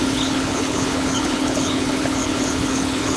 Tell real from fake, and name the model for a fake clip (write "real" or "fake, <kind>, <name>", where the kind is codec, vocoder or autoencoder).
fake, codec, HILCodec